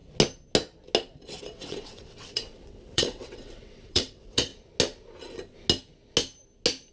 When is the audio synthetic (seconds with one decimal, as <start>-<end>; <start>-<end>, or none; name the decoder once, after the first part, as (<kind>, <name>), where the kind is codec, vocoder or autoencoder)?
1.4-4.5 (vocoder, WaveNeXt)